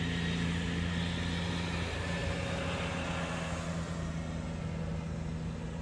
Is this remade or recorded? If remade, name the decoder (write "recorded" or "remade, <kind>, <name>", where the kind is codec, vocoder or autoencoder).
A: recorded